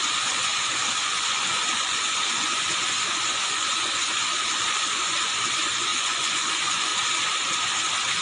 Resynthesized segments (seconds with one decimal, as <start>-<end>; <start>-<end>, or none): 0.0-6.9